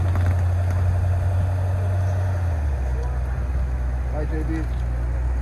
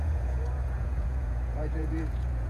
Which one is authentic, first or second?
first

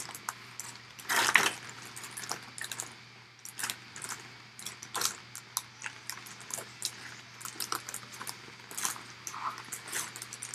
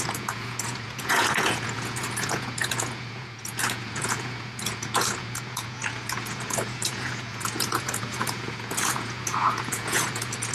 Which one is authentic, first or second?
first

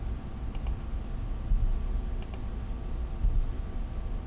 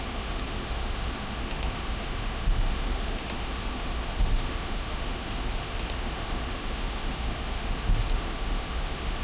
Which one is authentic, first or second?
first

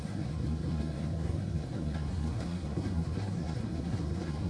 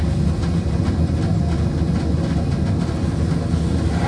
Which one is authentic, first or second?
second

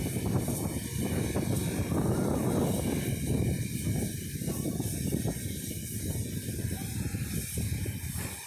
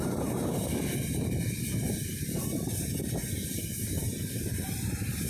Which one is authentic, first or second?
first